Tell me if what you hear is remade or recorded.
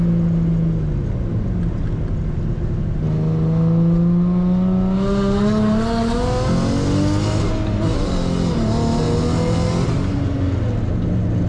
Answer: recorded